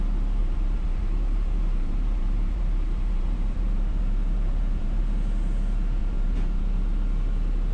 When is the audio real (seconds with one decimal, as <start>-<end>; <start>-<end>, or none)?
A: 0.0-0.4; 5.0-6.0; 6.6-7.7